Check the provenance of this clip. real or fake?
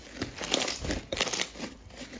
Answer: real